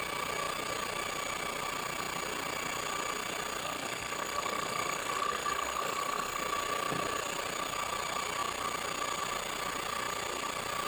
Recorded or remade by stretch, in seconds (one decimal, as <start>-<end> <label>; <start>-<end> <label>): 0.0-3.6 recorded; 3.6-6.4 remade; 6.4-10.9 recorded